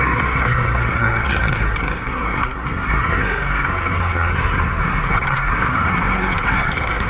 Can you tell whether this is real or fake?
fake